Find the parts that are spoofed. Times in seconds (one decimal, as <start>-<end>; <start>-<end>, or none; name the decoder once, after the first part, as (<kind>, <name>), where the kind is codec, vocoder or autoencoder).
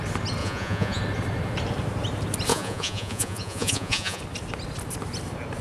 0.4-1.0 (vocoder, Vocos); 2.5-4.2